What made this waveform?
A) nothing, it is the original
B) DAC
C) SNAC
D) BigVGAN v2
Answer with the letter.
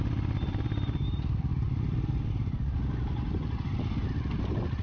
A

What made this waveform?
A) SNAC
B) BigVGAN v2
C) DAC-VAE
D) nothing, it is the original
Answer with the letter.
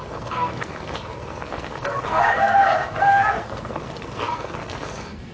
A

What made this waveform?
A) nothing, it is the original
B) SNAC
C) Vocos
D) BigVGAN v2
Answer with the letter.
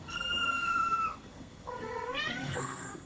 B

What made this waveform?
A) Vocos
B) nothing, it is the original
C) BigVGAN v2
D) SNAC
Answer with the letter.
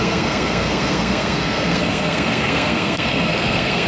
D